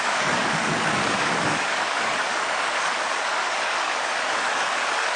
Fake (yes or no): yes